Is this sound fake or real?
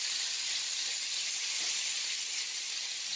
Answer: real